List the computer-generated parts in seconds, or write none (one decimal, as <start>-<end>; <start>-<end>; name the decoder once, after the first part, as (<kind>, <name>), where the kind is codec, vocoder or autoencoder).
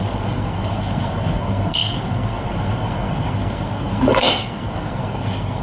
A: 0.0-5.6 (codec, SNAC)